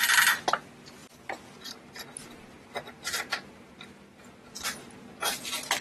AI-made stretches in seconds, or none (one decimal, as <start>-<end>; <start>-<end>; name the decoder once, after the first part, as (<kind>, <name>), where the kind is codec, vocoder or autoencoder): none